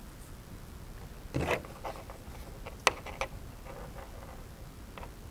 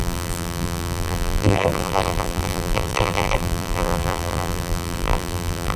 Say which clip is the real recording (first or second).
first